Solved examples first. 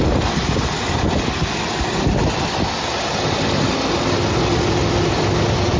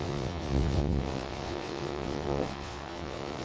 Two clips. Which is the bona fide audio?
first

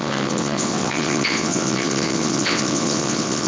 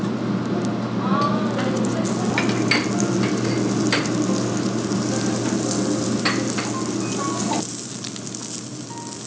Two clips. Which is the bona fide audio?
second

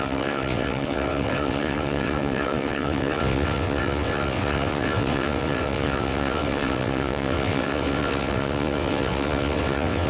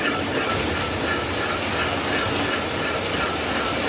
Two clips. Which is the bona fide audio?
second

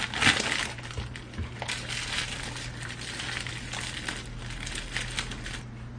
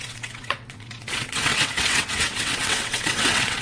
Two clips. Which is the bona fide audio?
first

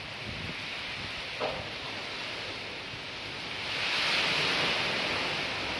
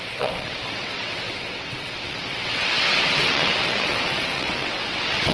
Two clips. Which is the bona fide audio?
first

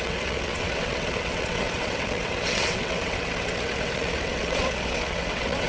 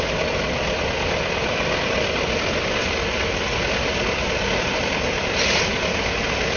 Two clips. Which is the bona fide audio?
second